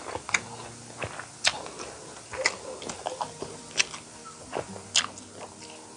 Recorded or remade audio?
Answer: recorded